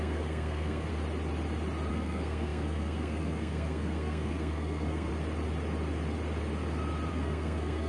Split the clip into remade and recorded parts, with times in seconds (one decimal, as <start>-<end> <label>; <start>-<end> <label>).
0.0-0.9 remade; 0.9-1.9 recorded; 1.9-5.1 remade; 5.1-7.1 recorded; 7.1-7.9 remade